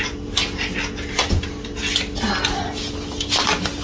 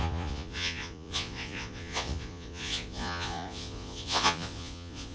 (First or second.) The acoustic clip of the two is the first